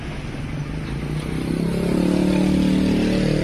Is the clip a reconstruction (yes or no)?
no